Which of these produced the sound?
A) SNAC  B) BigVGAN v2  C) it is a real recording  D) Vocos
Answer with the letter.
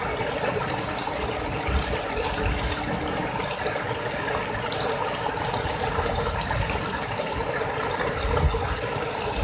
C